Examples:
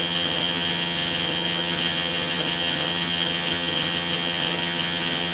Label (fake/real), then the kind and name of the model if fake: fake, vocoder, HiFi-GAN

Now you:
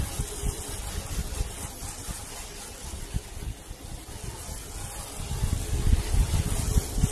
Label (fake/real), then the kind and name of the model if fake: real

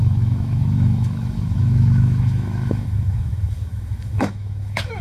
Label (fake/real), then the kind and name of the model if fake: fake, autoencoder, DAC-VAE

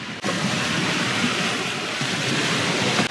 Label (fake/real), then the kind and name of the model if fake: real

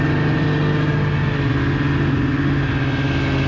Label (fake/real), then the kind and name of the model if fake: real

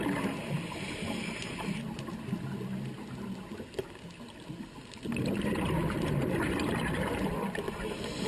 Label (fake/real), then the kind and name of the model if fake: real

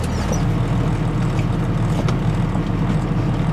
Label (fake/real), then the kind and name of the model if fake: real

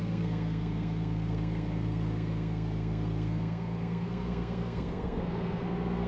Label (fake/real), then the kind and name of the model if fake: fake, codec, SNAC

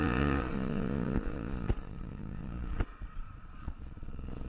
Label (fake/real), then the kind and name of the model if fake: fake, vocoder, Vocos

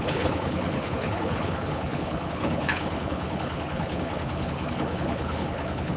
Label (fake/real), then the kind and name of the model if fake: fake, codec, HILCodec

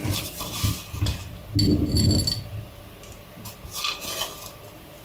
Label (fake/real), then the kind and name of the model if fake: real